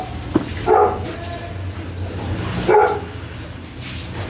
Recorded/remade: recorded